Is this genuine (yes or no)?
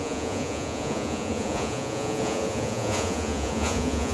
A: no